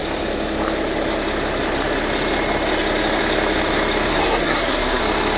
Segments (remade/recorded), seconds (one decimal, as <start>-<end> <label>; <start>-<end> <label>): 0.0-4.1 recorded; 4.1-5.0 remade; 5.0-5.4 recorded